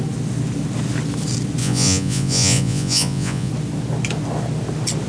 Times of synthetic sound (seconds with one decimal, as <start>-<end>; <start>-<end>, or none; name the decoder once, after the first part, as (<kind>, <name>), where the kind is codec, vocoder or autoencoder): 1.6-3.5 (vocoder, Vocos)